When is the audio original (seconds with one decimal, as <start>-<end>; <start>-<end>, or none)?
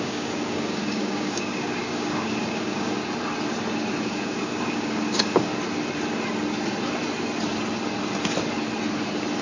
3.0-4.0; 5.5-9.4